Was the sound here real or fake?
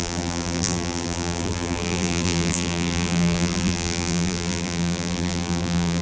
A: fake